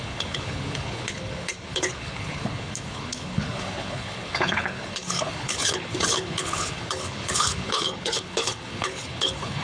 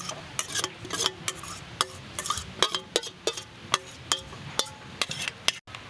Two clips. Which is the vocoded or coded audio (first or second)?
first